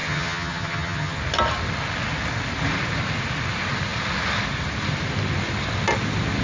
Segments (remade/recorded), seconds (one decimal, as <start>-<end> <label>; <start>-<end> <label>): 0.0-1.2 remade; 1.2-6.4 recorded